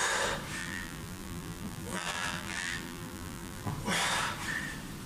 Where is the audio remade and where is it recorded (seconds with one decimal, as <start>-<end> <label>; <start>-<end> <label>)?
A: 0.0-0.6 recorded; 0.6-3.7 remade; 3.7-5.1 recorded